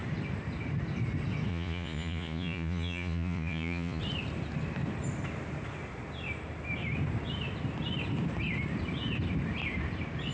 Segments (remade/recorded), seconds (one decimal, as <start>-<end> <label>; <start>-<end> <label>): 0.0-1.5 recorded; 1.5-4.0 remade; 4.0-10.3 recorded